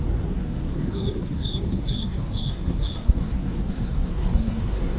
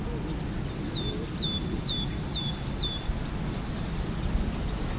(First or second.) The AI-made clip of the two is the first